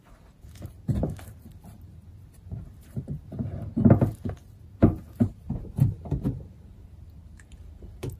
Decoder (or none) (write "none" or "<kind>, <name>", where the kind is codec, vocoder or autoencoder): vocoder, BigVGAN v2